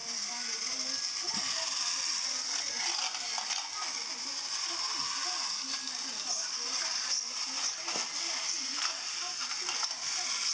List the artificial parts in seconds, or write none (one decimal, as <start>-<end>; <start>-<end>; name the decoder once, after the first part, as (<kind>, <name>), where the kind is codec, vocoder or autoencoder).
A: none